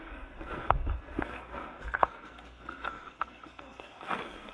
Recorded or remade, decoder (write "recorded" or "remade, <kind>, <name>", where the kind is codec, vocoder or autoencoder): remade, codec, SNAC